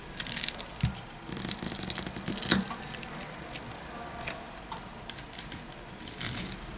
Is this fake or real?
real